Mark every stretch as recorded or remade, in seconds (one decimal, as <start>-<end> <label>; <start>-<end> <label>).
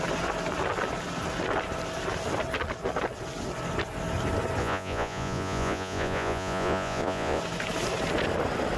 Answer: 0.0-4.6 recorded; 4.6-7.4 remade; 7.4-8.8 recorded